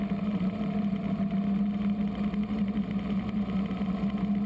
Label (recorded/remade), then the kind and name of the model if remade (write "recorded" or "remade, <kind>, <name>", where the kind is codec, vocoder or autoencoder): recorded